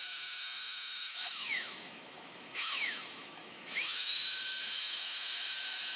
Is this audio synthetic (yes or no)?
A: yes